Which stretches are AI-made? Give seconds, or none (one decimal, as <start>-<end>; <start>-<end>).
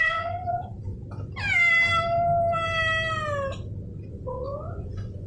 0.0-0.9; 4.1-5.3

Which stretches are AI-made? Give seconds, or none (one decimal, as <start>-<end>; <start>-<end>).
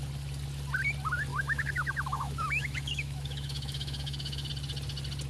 1.3-4.5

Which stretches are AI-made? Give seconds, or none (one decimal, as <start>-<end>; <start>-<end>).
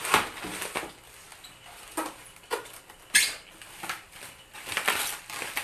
none